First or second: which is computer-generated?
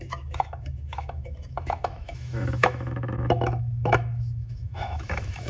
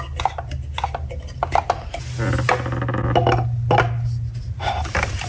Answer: first